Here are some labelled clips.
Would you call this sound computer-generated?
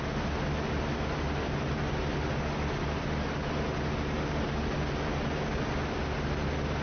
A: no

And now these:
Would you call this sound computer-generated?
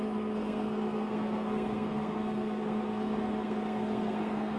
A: yes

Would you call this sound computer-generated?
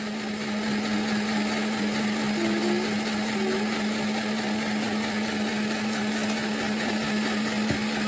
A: no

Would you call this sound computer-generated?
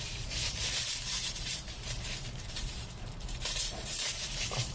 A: yes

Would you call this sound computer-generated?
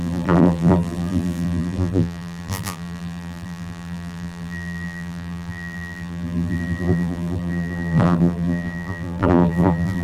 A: yes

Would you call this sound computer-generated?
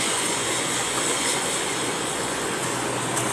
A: yes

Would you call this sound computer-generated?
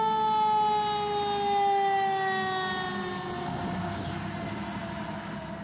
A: no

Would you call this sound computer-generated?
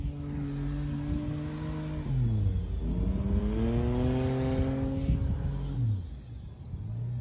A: no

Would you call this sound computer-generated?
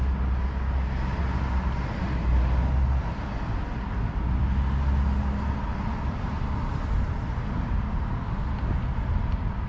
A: no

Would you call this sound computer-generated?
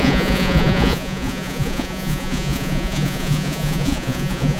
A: yes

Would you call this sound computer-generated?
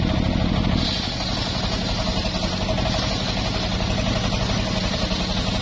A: no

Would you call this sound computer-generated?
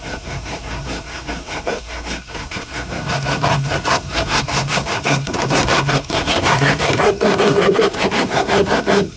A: yes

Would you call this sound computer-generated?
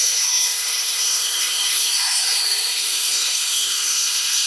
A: yes